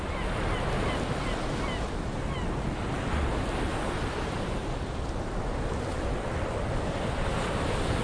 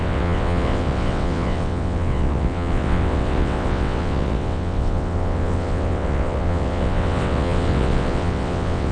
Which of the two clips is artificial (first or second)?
second